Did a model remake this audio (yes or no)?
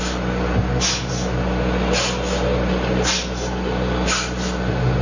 no